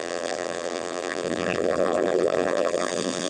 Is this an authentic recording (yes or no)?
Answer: no